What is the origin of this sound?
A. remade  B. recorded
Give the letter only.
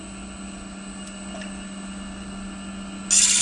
B